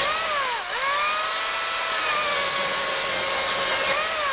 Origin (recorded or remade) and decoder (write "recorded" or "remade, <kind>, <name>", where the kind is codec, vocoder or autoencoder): recorded